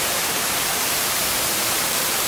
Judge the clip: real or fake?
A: fake